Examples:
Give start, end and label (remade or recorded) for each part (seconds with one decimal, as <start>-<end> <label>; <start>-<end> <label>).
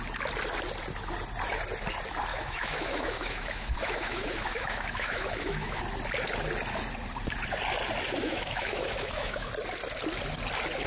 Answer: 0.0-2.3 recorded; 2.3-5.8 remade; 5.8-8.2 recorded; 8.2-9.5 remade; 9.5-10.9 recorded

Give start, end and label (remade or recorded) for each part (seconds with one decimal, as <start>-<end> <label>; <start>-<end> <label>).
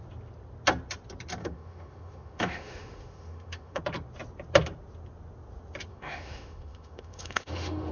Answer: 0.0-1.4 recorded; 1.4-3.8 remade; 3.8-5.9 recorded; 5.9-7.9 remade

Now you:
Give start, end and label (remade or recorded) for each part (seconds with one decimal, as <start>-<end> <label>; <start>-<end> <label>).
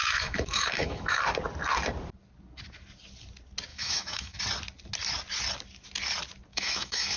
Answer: 0.0-1.2 remade; 1.2-3.7 recorded; 3.7-4.4 remade; 4.4-6.5 recorded; 6.5-7.2 remade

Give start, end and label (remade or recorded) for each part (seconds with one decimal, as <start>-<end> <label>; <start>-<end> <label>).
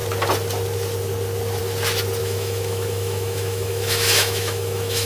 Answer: 0.0-2.2 recorded; 2.2-5.1 remade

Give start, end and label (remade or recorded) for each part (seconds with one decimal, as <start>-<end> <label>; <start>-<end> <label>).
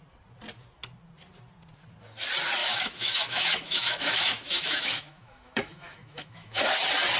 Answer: 0.0-2.6 recorded; 2.6-6.6 remade; 6.6-7.2 recorded